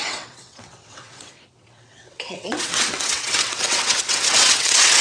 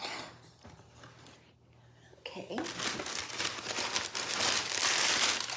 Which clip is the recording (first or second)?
second